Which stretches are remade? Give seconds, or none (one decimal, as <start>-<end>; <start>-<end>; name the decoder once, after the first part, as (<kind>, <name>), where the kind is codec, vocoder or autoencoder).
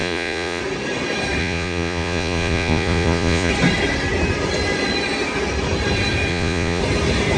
0.0-0.6 (vocoder, Vocos); 1.4-3.5; 6.3-6.8